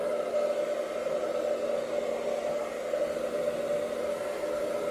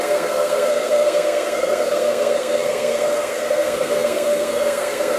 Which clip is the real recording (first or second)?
first